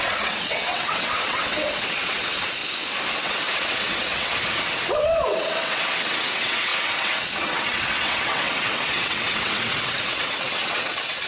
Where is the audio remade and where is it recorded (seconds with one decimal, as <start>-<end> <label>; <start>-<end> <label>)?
0.0-2.6 remade; 2.6-3.2 recorded; 3.2-11.3 remade